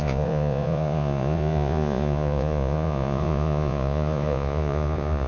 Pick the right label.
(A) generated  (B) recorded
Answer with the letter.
A